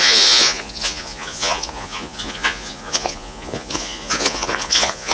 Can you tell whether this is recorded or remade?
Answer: remade